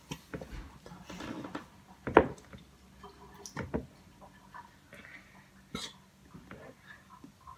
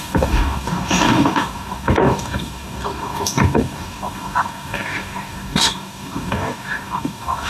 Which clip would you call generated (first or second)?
second